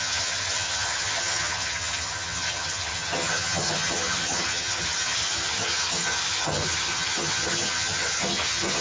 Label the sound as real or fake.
fake